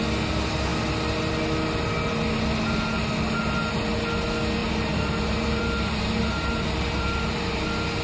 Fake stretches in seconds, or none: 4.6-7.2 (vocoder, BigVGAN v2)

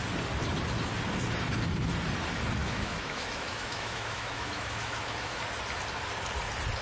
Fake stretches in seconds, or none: 2.6-5.4 (autoencoder, DAC-VAE)

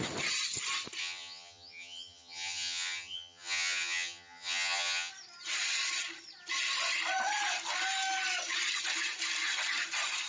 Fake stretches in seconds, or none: 1.0-5.1 (vocoder, HiFi-GAN)

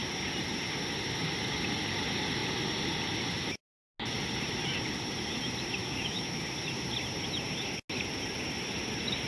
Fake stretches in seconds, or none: 5.8-6.4 (autoencoder, DAC-VAE)

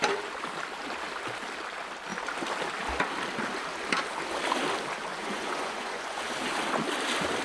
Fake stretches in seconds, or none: 5.1-6.2 (vocoder, Vocos)